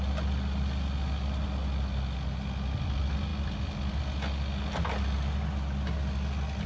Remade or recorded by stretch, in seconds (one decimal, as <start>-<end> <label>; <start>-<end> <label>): 0.0-6.7 recorded

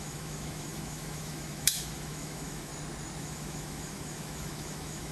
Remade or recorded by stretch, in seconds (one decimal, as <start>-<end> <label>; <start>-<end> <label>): 0.0-2.7 remade; 2.7-3.2 recorded; 3.2-5.1 remade

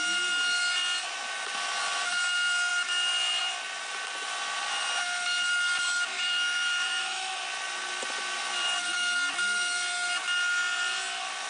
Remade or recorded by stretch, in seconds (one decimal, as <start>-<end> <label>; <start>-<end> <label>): 0.0-6.1 recorded; 6.1-7.4 remade; 7.4-11.5 recorded

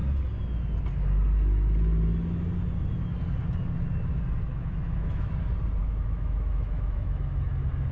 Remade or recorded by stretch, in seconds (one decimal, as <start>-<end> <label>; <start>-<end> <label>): 0.0-4.5 recorded; 4.5-5.3 remade; 5.3-5.8 recorded; 5.8-7.5 remade; 7.5-7.9 recorded

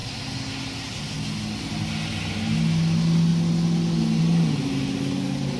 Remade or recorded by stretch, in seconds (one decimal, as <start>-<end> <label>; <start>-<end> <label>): 0.0-5.6 recorded

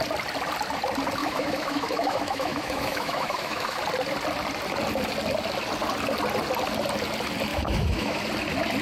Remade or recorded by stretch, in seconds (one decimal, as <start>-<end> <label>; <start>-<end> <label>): 0.0-1.2 recorded; 1.2-3.8 remade; 3.8-7.5 recorded; 7.5-8.2 remade; 8.2-8.8 recorded

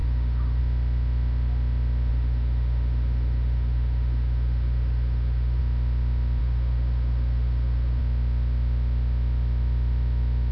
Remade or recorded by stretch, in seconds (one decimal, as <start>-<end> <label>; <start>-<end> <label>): 0.0-0.6 remade; 0.6-2.1 recorded; 2.1-5.6 remade; 5.6-6.4 recorded; 6.4-8.0 remade; 8.0-10.5 recorded

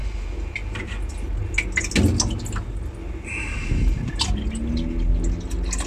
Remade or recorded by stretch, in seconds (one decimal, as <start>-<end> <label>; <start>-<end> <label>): 0.0-5.9 recorded